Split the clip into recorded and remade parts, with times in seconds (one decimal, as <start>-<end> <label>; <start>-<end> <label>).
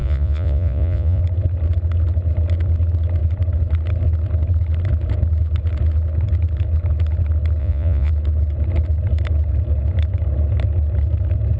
0.0-1.2 remade; 1.2-7.6 recorded; 7.6-8.1 remade; 8.1-11.6 recorded